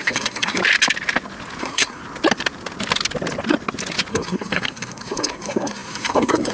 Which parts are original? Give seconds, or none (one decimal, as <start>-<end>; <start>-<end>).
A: 0.6-1.6; 2.0-4.1